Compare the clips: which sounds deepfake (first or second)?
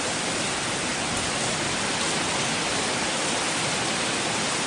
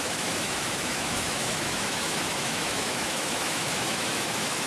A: second